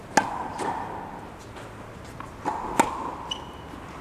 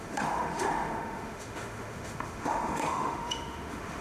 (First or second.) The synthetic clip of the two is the second